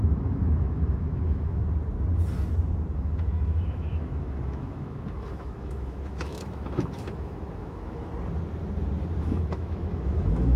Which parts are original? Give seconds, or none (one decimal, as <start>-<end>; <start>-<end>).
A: 1.6-2.9; 8.1-9.2